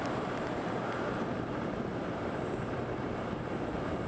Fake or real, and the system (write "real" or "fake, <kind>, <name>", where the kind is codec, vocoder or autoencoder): fake, vocoder, BigVGAN v2